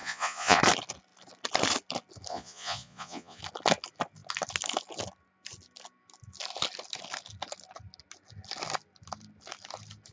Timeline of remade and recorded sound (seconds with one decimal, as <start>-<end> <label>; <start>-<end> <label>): 0.0-0.6 remade; 0.6-2.3 recorded; 2.3-3.4 remade; 3.4-10.1 recorded